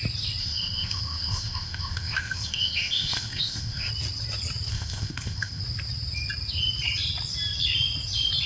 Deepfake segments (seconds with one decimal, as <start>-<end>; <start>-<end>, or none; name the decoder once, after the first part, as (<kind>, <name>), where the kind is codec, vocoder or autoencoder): 0.4-3.9 (codec, ZipCodec); 4.7-5.6